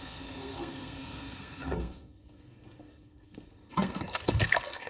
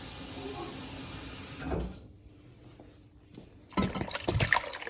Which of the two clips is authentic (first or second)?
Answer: second